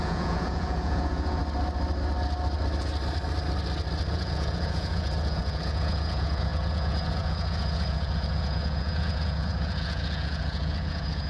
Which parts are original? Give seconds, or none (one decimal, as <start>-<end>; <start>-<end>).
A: 1.4-4.1